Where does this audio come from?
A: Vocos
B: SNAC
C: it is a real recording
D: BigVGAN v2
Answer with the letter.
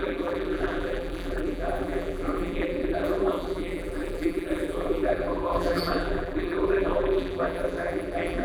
D